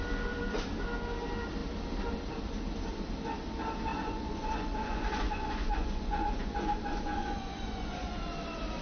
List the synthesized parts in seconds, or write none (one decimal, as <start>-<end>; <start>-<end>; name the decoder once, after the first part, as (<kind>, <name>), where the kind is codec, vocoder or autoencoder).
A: 3.9-8.1 (vocoder, Vocos)